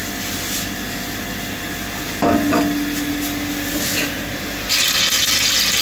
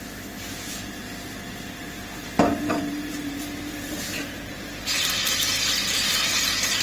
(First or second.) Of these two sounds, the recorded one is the first